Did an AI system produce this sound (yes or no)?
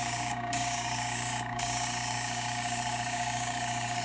yes